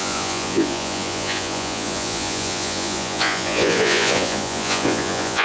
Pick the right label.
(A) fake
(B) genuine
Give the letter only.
A